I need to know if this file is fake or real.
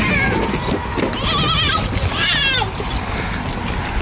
real